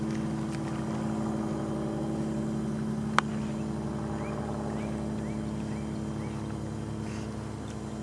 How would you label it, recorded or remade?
recorded